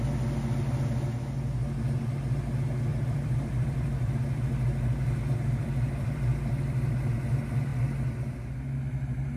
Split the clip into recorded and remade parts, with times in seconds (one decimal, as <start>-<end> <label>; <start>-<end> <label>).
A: 0.0-2.9 recorded; 2.9-6.9 remade; 6.9-9.4 recorded